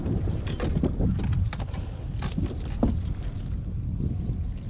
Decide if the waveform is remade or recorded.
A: recorded